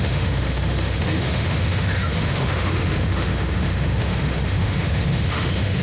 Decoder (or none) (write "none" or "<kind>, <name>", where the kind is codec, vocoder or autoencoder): autoencoder, DAC-VAE